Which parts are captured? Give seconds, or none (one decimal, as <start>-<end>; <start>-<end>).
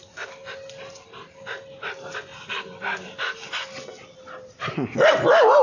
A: 0.0-5.6